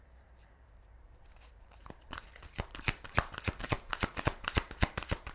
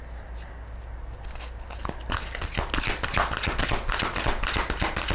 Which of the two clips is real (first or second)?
second